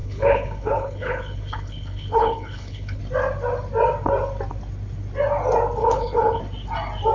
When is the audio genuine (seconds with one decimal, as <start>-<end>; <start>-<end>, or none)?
3.0-5.8; 6.4-7.1